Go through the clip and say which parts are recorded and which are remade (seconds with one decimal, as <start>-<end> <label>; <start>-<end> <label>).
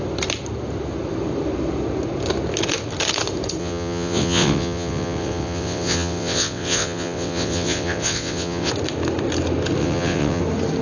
0.0-3.6 recorded; 3.6-8.7 remade; 8.7-9.8 recorded; 9.8-10.4 remade; 10.4-10.8 recorded